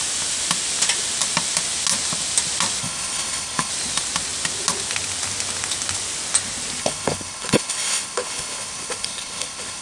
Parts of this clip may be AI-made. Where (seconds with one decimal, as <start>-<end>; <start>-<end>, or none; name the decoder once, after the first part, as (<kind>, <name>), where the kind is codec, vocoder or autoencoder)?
2.8-3.7 (codec, HILCodec); 6.8-9.8